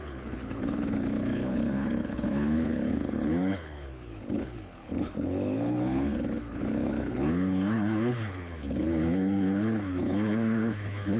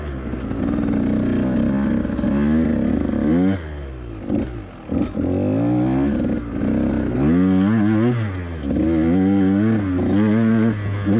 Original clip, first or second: second